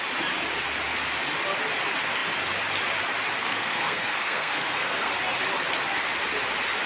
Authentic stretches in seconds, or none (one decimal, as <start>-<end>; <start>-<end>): 0.0-3.4; 5.1-6.9